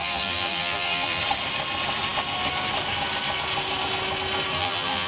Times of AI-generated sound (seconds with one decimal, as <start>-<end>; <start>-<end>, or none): 0.0-1.2; 4.5-5.1